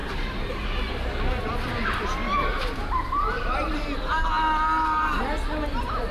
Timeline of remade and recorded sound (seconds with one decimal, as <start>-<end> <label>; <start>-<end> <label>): 0.0-0.9 remade; 0.9-2.5 recorded; 2.5-4.0 remade; 4.0-6.1 recorded

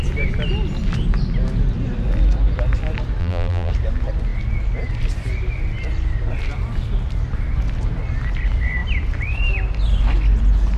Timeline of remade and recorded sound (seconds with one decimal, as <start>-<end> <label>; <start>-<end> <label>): 0.0-3.2 recorded; 3.2-3.7 remade; 3.7-10.8 recorded

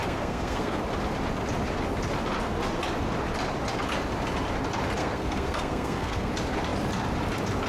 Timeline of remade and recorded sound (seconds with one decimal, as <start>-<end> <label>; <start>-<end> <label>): 0.0-0.8 remade; 0.8-5.0 recorded; 5.0-6.3 remade; 6.3-7.7 recorded

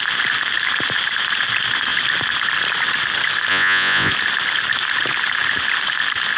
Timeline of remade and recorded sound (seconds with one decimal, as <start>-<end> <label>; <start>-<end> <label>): 0.0-3.5 recorded; 3.5-4.1 remade; 4.1-6.4 recorded

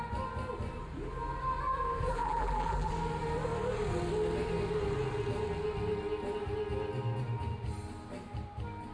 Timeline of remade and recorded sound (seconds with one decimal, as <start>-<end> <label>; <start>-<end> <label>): 0.0-2.1 recorded; 2.1-2.9 remade; 2.9-8.9 recorded